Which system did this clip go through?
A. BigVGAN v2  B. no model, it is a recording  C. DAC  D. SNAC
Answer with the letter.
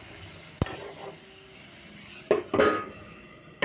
B